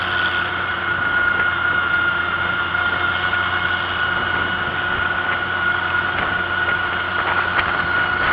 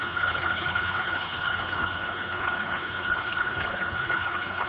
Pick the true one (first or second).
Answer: first